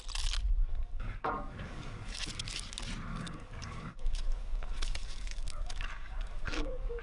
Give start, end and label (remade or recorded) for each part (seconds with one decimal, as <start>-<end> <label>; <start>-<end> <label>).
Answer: 0.0-0.7 recorded; 0.7-2.2 remade; 2.2-3.1 recorded; 3.1-7.0 remade